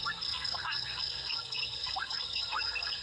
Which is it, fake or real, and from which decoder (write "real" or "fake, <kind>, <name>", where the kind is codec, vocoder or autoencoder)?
fake, codec, SNAC